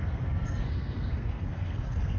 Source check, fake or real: fake